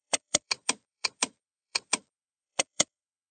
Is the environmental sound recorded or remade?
remade